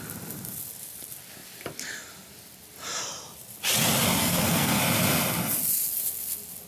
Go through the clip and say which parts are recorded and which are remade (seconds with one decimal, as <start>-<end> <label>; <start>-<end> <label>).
0.0-4.2 recorded; 4.2-4.8 remade; 4.8-6.7 recorded